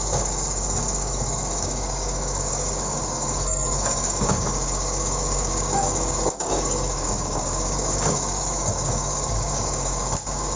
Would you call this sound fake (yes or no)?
yes